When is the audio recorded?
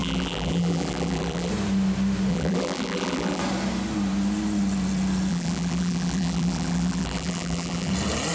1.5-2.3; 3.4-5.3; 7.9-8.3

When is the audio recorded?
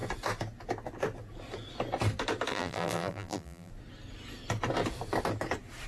0.0-2.5; 3.7-5.9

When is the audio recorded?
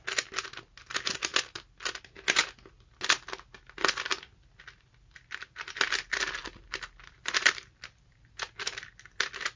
0.0-6.4; 8.2-9.6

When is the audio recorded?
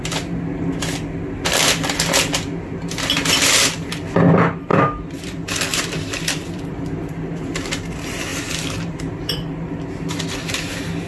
0.0-4.7; 6.8-8.3; 9.0-11.1